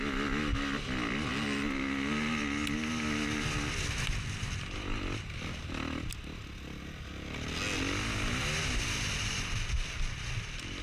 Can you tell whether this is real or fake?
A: real